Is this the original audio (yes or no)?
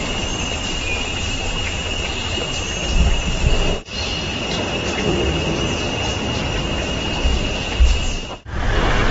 no